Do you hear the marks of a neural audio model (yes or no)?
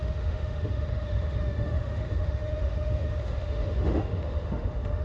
yes